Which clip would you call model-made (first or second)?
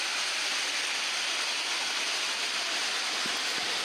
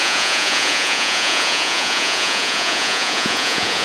second